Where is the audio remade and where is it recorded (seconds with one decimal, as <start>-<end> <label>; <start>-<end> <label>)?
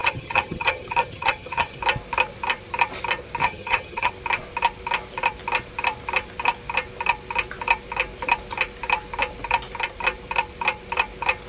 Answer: 0.0-1.8 remade; 1.8-3.4 recorded; 3.4-4.1 remade; 4.1-11.5 recorded